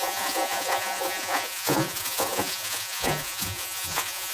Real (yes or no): no